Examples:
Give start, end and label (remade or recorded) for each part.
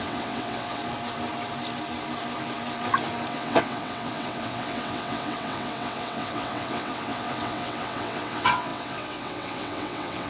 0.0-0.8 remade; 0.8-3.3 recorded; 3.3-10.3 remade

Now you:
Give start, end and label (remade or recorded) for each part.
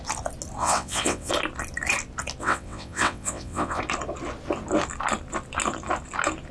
0.0-0.6 recorded; 0.6-1.3 remade; 1.3-2.4 recorded; 2.4-3.8 remade; 3.8-6.5 recorded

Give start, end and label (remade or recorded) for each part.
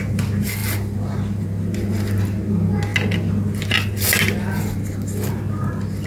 0.0-6.1 recorded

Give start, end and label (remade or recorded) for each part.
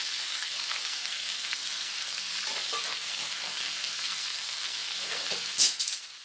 0.0-2.3 remade; 2.3-2.8 recorded; 2.8-6.2 remade